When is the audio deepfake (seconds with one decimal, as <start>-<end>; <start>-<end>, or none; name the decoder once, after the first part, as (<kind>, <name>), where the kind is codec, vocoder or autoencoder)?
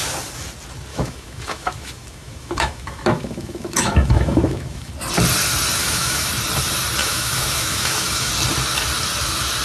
0.9-4.9 (autoencoder, DAC-VAE); 5.8-6.3; 7.0-8.3